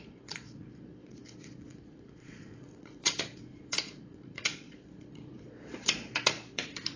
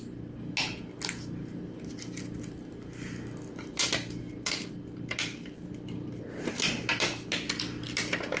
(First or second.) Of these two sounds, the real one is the second